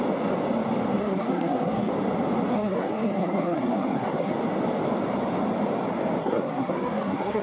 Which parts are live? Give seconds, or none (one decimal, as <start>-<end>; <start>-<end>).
0.0-1.0; 1.9-2.5; 4.3-6.2